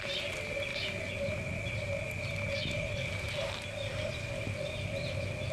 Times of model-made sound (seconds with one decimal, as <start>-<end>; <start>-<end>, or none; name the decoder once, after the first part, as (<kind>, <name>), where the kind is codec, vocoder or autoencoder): none